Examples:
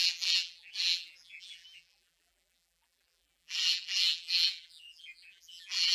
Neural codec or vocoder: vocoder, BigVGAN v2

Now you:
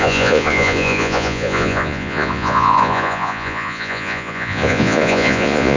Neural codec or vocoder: vocoder, Vocos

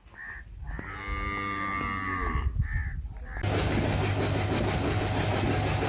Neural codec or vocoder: none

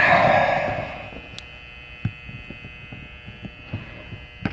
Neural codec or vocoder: none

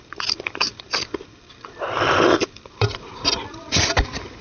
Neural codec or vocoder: vocoder, BigVGAN v2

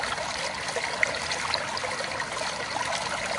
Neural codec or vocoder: none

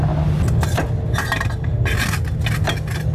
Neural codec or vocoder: none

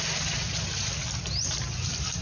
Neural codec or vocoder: none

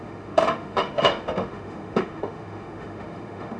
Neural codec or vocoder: autoencoder, DAC-VAE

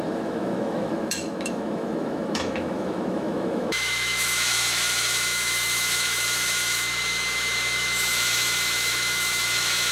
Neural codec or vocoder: autoencoder, DAC-VAE